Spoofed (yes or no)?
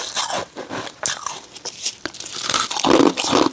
no